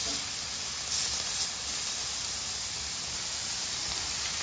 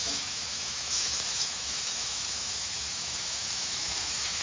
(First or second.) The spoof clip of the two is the second